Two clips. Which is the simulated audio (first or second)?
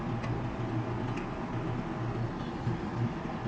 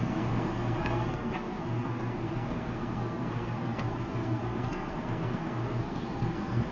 second